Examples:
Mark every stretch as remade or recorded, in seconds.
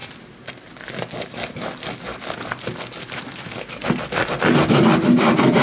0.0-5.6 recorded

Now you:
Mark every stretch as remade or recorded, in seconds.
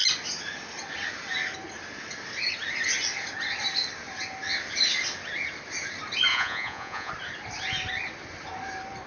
0.0-6.3 recorded; 6.3-7.1 remade; 7.1-9.1 recorded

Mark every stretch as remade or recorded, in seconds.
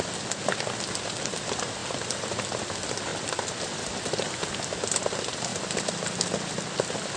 0.0-1.8 recorded; 1.8-2.4 remade; 2.4-3.1 recorded; 3.1-4.5 remade; 4.5-5.5 recorded; 5.5-6.5 remade; 6.5-7.2 recorded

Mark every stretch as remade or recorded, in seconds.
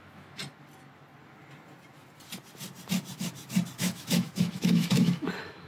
0.0-0.4 remade; 0.4-3.8 recorded; 3.8-5.7 remade